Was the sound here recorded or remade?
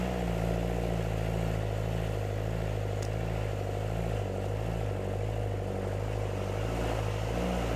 recorded